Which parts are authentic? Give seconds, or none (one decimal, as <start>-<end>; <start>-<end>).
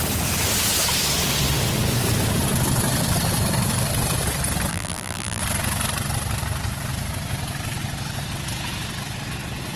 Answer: 0.0-4.7; 5.4-9.8